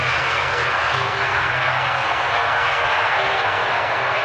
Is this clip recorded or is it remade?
remade